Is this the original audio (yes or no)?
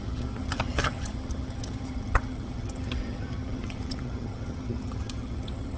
no